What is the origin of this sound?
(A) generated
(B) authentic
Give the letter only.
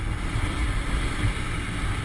B